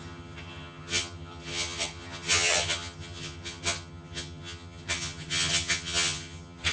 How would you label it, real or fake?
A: fake